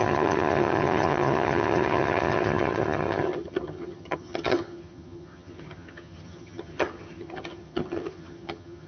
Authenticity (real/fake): fake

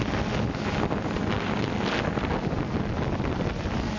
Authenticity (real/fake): real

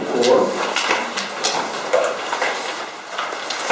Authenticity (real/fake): real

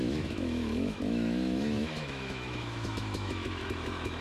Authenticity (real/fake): fake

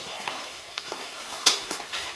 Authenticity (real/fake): fake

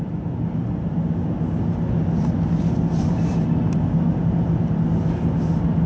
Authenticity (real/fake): real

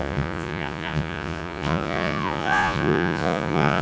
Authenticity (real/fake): fake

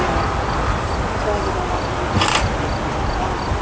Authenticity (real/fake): real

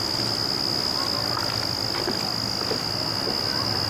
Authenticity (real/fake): real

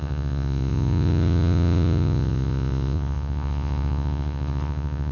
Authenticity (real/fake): fake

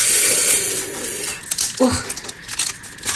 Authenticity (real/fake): real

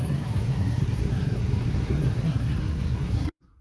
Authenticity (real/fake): fake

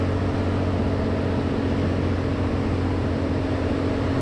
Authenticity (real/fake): real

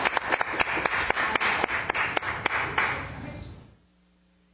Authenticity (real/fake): real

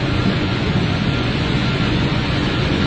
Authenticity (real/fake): fake